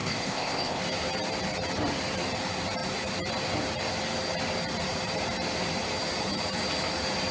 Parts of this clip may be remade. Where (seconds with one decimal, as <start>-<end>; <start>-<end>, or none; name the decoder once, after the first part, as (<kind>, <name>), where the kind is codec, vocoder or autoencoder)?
0.0-0.8 (codec, ZipCodec)